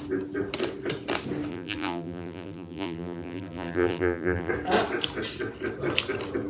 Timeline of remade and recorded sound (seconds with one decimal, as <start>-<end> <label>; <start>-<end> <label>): 0.0-1.5 recorded; 1.5-4.5 remade; 4.5-6.5 recorded